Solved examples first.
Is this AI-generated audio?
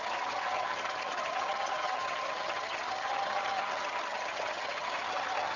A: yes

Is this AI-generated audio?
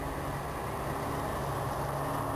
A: no